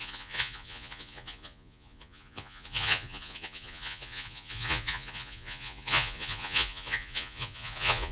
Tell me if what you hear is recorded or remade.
remade